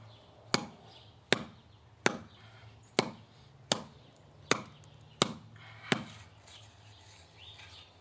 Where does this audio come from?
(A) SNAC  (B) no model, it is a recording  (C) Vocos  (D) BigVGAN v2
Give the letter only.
B